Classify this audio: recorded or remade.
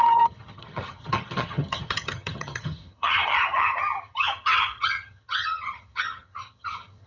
remade